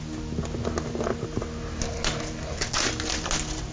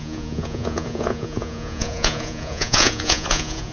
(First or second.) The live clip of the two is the first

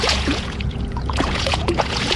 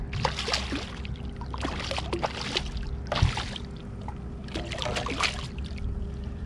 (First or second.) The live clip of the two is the second